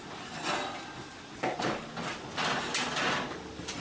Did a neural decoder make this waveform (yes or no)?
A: no